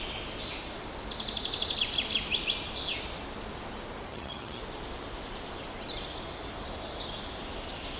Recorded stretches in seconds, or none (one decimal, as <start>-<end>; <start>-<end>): 0.0-4.1; 4.6-8.0